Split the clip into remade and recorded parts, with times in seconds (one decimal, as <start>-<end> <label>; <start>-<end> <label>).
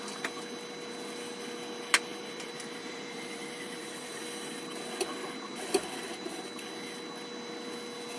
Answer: 0.0-2.1 recorded; 2.1-4.2 remade; 4.2-5.2 recorded; 5.2-6.4 remade; 6.4-8.2 recorded